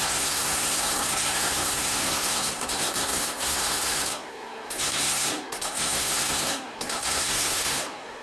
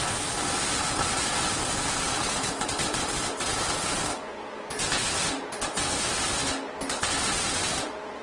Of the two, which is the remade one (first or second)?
first